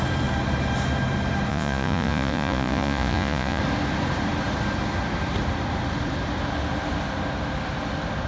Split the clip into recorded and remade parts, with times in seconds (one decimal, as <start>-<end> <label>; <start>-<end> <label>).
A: 0.0-1.5 recorded; 1.5-3.6 remade; 3.6-8.3 recorded